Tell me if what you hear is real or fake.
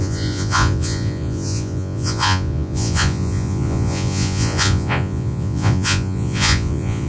fake